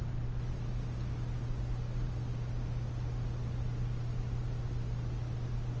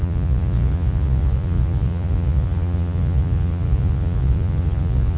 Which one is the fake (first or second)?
second